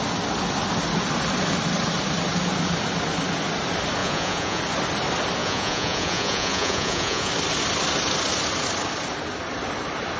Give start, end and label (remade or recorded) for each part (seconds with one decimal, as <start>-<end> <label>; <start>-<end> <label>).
0.0-4.0 recorded; 4.0-4.6 remade; 4.6-5.4 recorded; 5.4-7.3 remade; 7.3-10.2 recorded